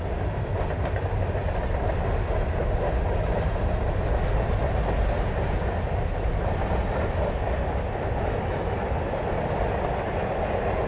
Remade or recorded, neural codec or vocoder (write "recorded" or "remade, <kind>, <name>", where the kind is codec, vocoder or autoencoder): recorded